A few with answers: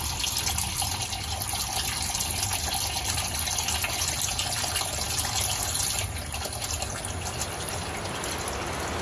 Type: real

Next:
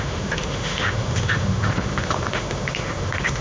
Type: fake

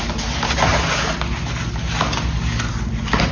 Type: real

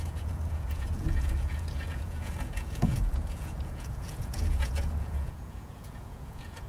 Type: fake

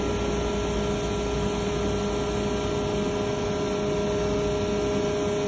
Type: real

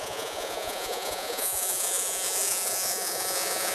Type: fake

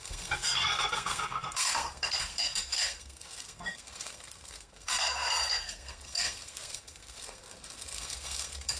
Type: fake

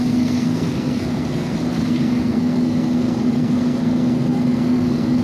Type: fake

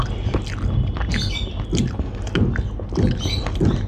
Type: real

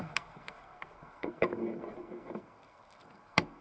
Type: fake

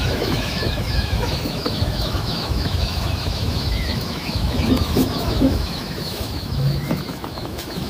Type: fake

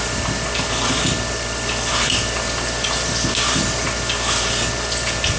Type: real